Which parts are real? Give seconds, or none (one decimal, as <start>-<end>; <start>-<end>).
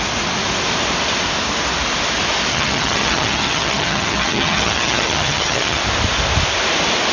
0.0-2.5; 5.8-7.1